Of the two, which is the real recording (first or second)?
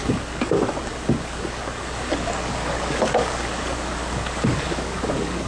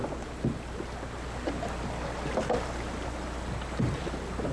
second